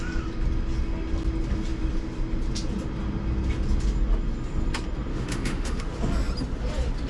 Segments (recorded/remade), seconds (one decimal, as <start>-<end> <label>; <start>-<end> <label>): 0.0-5.1 recorded; 5.1-5.8 remade; 5.8-7.1 recorded